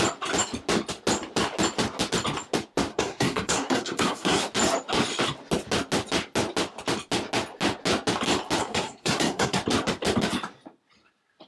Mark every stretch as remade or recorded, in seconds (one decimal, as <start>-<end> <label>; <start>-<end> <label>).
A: 0.0-2.9 recorded; 2.9-4.4 remade; 4.4-8.6 recorded; 8.6-9.6 remade; 9.6-11.5 recorded